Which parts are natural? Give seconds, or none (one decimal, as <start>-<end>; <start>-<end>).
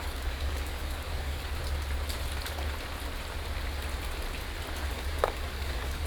1.6-4.9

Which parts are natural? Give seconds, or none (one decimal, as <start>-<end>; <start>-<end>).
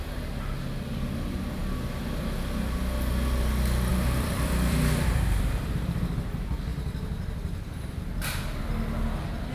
0.0-3.9; 5.6-9.5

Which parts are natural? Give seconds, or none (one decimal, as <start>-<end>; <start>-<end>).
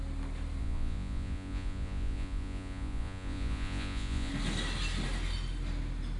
0.0-0.6; 4.3-6.2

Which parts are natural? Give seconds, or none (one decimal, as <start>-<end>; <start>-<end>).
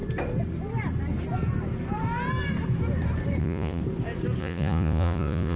0.0-3.4; 3.8-4.4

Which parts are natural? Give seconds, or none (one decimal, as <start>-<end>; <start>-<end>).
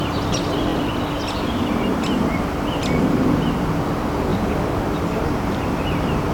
0.0-4.3